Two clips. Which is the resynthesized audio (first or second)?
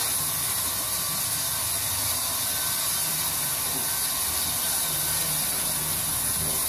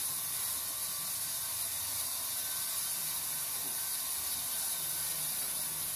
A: second